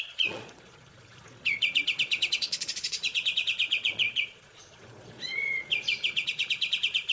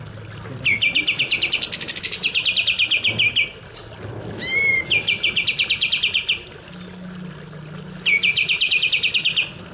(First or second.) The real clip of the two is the second